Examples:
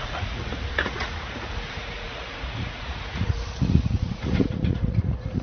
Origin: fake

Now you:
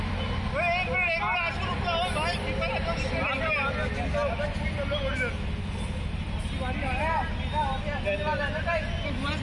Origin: real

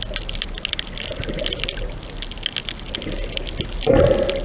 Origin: real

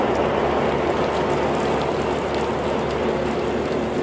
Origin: real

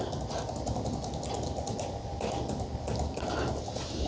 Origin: real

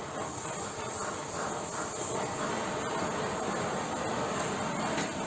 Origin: real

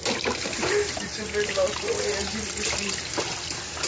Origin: real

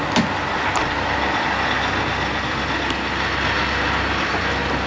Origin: real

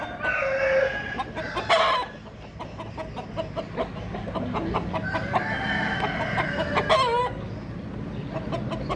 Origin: real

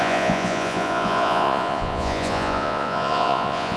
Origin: fake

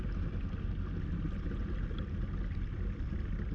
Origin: real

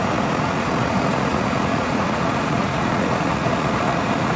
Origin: fake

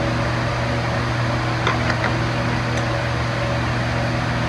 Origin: real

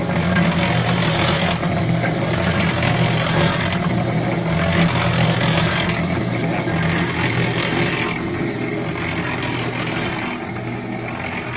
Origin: real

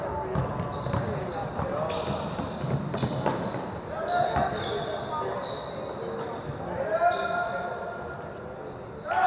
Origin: real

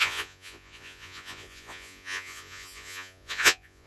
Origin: fake